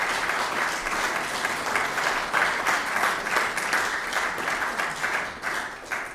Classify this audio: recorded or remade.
recorded